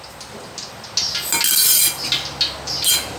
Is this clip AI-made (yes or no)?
no